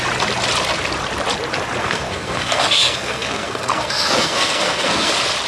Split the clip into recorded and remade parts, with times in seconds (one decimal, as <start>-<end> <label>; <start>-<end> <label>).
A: 0.0-1.8 recorded; 1.8-5.1 remade; 5.1-5.5 recorded